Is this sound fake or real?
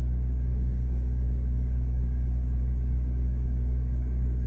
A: fake